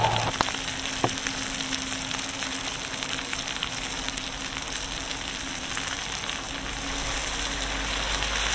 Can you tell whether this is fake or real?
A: real